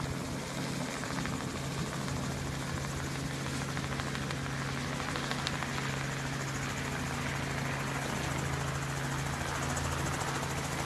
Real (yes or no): yes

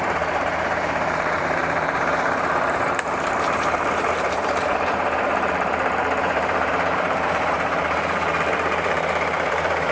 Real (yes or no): no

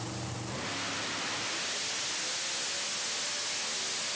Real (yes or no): yes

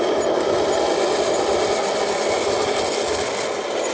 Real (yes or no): yes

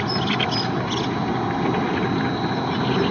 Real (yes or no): yes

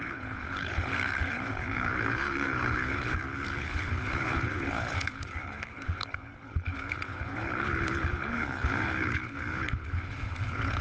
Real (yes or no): no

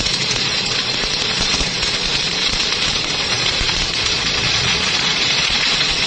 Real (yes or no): no